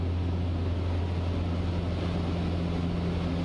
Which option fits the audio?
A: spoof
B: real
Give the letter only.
B